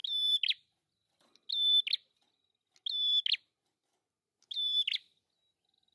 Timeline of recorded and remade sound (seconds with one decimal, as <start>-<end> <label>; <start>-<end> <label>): 0.0-5.9 recorded